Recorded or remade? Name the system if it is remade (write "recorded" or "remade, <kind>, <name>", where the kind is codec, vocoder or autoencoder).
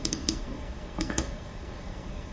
remade, codec, SNAC